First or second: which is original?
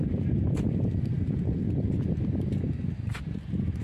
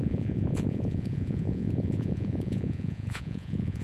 first